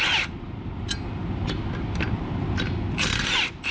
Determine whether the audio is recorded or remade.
recorded